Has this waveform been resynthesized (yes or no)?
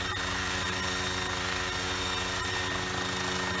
no